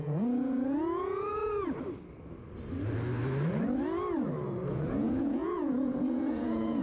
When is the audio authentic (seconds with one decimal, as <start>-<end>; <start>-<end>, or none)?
1.4-4.7